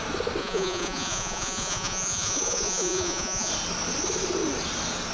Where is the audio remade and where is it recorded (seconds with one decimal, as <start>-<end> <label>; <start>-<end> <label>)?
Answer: 0.0-0.4 recorded; 0.4-3.5 remade; 3.5-5.1 recorded